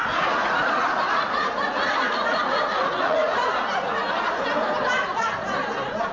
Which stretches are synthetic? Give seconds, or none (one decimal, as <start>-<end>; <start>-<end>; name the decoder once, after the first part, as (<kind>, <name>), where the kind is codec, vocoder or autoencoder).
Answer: 0.0-3.6 (vocoder, Vocos); 5.1-5.6